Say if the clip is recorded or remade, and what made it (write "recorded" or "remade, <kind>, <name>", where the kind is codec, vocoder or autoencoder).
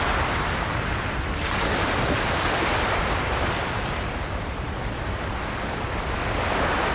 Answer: recorded